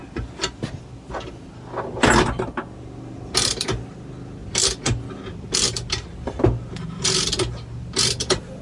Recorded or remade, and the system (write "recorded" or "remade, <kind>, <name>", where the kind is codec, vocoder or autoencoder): recorded